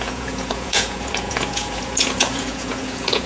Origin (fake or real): fake